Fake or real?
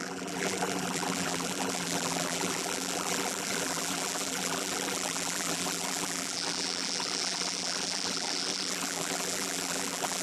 fake